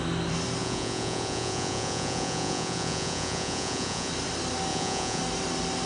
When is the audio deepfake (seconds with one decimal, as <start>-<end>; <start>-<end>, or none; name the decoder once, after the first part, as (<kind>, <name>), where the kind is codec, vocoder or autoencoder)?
0.6-4.1 (vocoder, Vocos); 4.7-5.2